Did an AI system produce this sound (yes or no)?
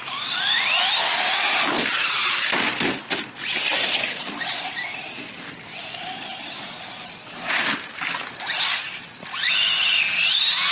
no